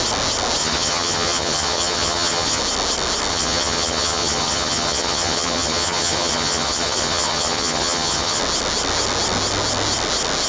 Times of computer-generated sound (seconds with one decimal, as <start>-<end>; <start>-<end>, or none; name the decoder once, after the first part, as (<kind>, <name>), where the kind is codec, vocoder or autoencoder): 0.6-2.6 (vocoder, HiFi-GAN); 3.3-8.4

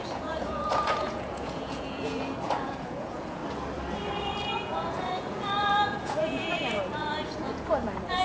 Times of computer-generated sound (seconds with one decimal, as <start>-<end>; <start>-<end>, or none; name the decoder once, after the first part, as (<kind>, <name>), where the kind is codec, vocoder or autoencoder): 0.0-3.4 (vocoder, Vocos); 4.1-8.2

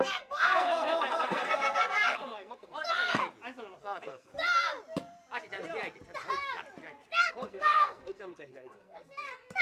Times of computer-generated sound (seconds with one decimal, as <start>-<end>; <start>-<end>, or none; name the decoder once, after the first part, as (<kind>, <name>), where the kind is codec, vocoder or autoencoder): 0.0-3.2 (codec, SNAC); 3.8-4.3; 7.3-9.6

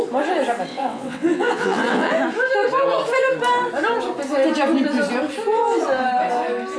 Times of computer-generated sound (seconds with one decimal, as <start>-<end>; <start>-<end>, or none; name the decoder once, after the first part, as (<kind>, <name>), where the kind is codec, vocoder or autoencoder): 0.7-2.1 (vocoder, WaveNeXt)